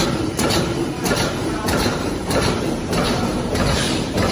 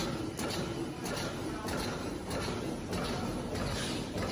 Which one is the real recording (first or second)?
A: second